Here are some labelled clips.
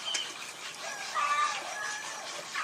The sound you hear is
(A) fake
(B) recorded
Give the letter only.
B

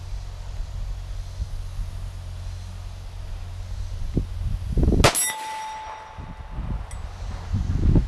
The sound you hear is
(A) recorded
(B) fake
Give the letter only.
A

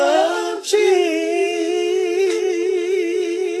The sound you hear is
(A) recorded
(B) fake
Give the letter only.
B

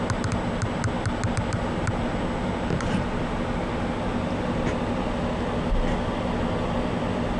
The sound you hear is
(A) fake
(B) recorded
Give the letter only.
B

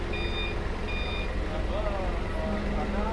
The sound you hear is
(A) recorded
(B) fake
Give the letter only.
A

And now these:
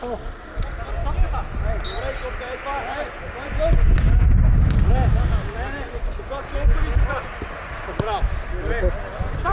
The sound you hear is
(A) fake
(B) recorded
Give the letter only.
B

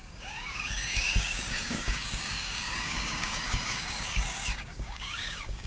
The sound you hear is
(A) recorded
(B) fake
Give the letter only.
B